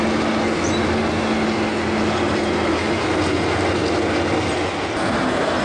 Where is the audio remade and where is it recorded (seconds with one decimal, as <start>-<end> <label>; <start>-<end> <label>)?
0.0-5.6 recorded